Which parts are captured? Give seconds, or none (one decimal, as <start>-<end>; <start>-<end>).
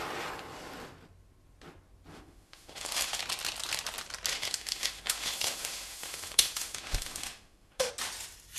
0.0-2.1; 3.2-4.3; 7.9-8.6